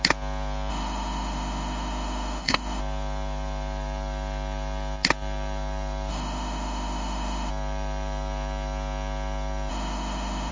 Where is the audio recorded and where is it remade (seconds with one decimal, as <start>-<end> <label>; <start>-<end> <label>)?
0.0-0.7 recorded; 0.7-2.8 remade; 2.8-6.1 recorded; 6.1-7.5 remade; 7.5-9.7 recorded; 9.7-10.5 remade